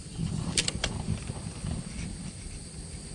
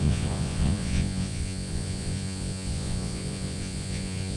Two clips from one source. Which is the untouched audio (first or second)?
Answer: first